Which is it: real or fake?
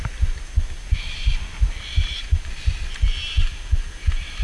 real